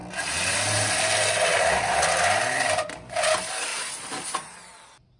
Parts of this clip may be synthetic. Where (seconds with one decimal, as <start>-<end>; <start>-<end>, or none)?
none